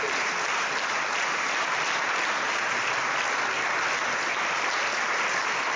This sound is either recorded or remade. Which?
recorded